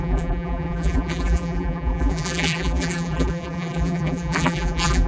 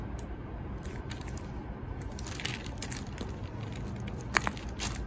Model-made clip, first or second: first